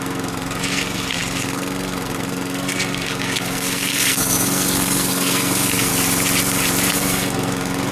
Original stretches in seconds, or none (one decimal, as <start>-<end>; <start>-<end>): 5.9-6.9